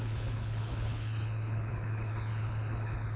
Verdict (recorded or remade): remade